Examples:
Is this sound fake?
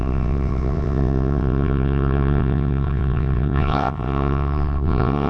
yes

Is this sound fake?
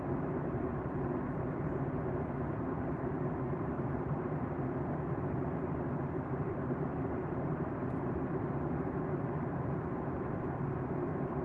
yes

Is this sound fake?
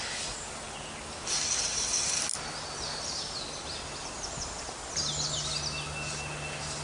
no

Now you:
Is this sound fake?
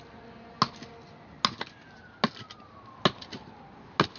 no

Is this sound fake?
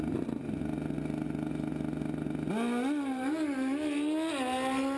no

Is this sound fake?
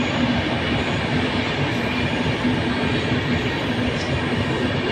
no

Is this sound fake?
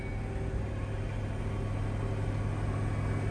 no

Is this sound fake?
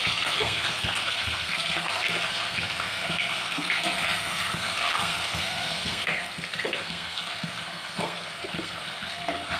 yes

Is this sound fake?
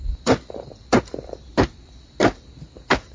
no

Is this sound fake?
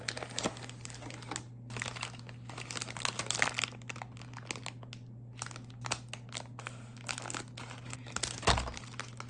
no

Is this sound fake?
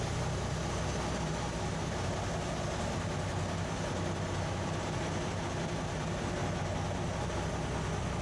no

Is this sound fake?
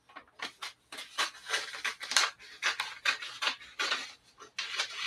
no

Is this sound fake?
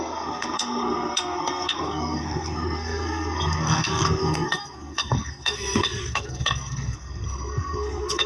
yes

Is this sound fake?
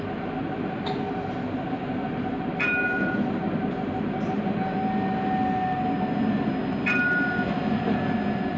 no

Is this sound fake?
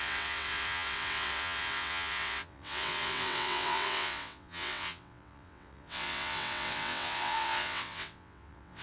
yes